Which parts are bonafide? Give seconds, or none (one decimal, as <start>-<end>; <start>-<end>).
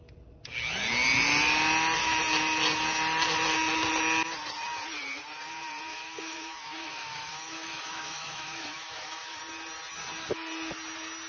0.0-5.9; 9.4-11.3